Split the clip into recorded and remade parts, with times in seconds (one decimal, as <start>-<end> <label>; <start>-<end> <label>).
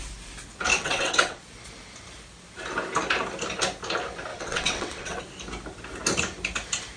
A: 0.0-0.7 recorded; 0.7-1.4 remade; 1.4-4.3 recorded; 4.3-5.2 remade; 5.2-7.0 recorded